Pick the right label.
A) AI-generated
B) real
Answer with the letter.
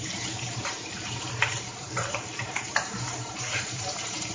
A